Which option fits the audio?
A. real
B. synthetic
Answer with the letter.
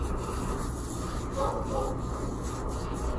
A